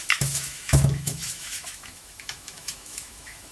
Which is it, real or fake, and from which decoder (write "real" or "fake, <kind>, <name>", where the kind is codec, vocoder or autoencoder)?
fake, autoencoder, DAC-VAE